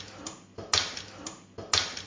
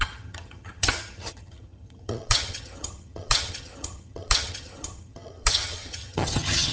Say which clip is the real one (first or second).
first